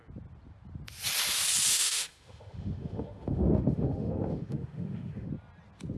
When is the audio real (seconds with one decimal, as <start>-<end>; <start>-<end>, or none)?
0.0-1.7; 5.3-6.0